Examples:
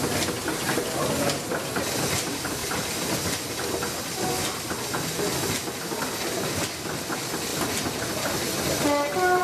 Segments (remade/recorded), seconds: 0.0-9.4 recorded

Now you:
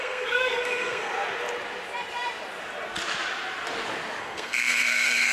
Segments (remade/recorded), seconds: 0.0-1.1 remade; 1.1-4.2 recorded; 4.2-5.3 remade

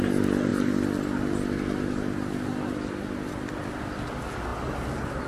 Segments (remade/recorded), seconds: 0.0-5.3 recorded

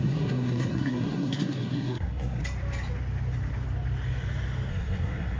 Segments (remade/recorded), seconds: 0.0-2.4 remade; 2.4-4.7 recorded; 4.7-5.4 remade

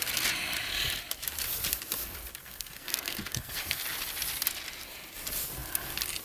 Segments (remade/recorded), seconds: 0.0-2.4 recorded; 2.4-3.8 remade; 3.8-6.2 recorded

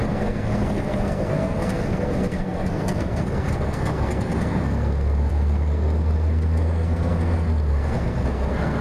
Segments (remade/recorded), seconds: 0.0-8.8 remade

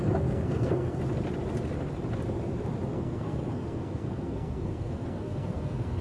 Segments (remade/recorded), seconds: 0.0-1.0 remade; 1.0-2.9 recorded; 2.9-6.0 remade

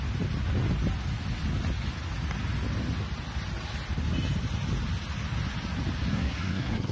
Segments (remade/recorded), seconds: 0.0-6.1 recorded; 6.1-6.9 remade